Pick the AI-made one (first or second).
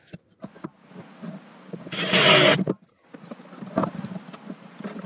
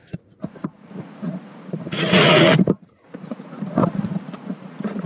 second